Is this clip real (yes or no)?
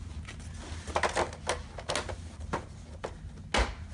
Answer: yes